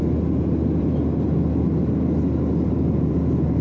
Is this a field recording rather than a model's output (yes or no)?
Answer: yes